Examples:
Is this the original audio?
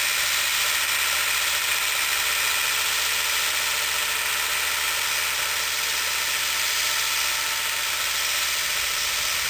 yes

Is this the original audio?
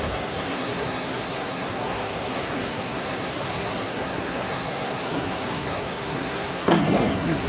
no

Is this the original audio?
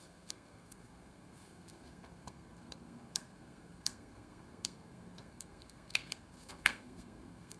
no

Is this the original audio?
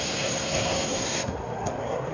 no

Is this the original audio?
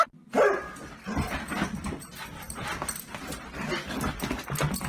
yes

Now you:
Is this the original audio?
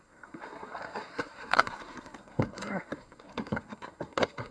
no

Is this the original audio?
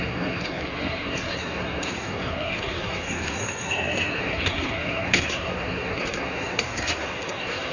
no